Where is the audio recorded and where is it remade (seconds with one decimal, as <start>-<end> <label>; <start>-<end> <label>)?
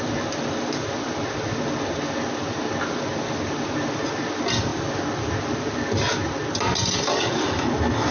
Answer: 0.0-8.1 recorded